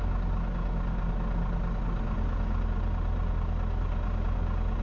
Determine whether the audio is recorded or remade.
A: recorded